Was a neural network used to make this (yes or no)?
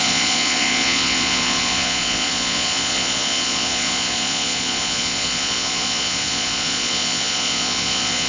yes